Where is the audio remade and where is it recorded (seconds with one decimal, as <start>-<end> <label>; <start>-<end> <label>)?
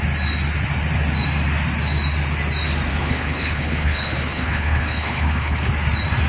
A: 0.0-2.9 recorded; 2.9-5.7 remade; 5.7-6.3 recorded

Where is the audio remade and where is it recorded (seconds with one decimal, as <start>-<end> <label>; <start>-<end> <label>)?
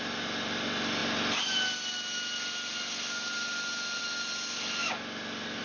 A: 0.0-5.6 recorded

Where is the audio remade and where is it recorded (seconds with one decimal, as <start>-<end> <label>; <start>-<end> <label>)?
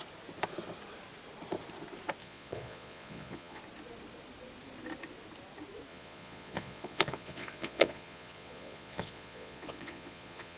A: 0.0-2.2 recorded; 2.2-3.6 remade; 3.6-5.9 recorded; 5.9-10.6 remade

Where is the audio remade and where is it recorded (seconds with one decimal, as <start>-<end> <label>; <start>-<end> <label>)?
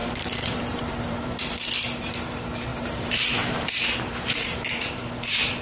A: 0.0-1.5 remade; 1.5-2.7 recorded; 2.7-5.6 remade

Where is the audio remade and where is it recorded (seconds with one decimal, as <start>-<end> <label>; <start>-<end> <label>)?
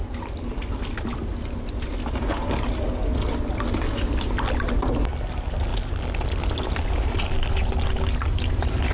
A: 0.0-8.9 recorded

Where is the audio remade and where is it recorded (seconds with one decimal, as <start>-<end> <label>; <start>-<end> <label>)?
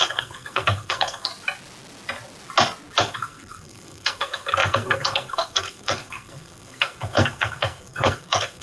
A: 0.0-1.3 remade; 1.3-3.0 recorded; 3.0-8.6 remade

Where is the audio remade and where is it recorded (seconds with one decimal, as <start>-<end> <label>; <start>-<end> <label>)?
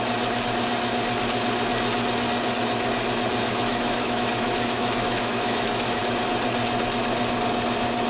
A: 0.0-3.5 recorded; 3.5-6.0 remade; 6.0-8.1 recorded